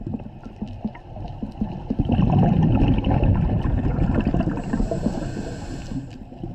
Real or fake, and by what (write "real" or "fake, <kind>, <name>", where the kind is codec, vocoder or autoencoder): fake, vocoder, BigVGAN v2